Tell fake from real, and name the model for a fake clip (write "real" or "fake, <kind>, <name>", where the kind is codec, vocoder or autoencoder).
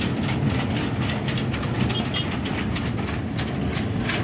real